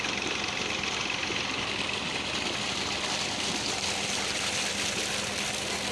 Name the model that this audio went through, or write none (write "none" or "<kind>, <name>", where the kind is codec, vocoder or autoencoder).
none